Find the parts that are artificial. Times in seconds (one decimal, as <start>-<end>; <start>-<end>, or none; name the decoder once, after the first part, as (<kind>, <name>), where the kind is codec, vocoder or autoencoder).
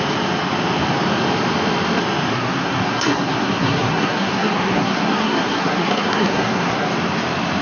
2.3-6.9 (codec, SNAC)